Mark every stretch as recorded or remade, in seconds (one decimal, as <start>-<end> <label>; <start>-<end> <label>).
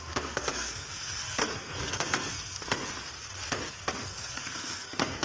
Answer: 0.0-2.8 remade; 2.8-3.7 recorded; 3.7-5.2 remade